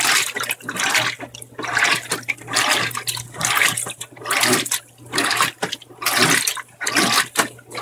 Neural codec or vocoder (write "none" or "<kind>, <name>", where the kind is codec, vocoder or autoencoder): none